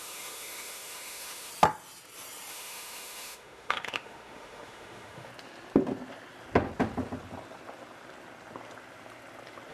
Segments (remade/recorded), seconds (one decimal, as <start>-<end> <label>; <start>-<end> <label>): 0.0-1.5 remade; 1.5-2.5 recorded; 2.5-5.3 remade; 5.3-9.7 recorded

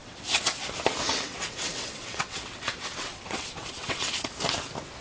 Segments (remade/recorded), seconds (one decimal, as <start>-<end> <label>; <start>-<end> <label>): 0.0-0.6 remade; 0.6-1.1 recorded; 1.1-4.1 remade; 4.1-5.0 recorded

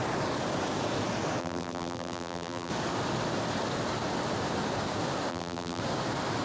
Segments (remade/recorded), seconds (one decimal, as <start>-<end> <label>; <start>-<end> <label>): 0.0-1.4 recorded; 1.4-2.7 remade; 2.7-5.3 recorded; 5.3-5.8 remade; 5.8-6.4 recorded